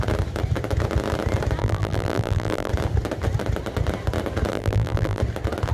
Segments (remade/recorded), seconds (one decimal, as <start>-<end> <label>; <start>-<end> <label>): 0.0-1.6 recorded; 1.6-2.7 remade; 2.7-4.5 recorded; 4.5-5.2 remade; 5.2-5.7 recorded